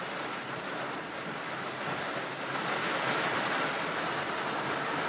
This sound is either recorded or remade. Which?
recorded